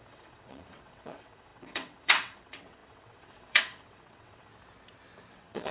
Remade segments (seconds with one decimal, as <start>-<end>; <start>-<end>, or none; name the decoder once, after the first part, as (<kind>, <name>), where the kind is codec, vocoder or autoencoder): 0.0-4.5 (vocoder, WaveNeXt); 5.3-5.7